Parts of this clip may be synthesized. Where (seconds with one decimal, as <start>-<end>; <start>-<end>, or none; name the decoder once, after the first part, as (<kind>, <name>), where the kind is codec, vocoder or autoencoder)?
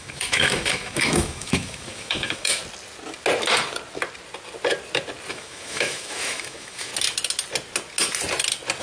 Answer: 0.0-2.6 (autoencoder, DAC-VAE); 5.3-6.9